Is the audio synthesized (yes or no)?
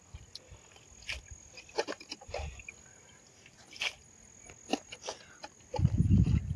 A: no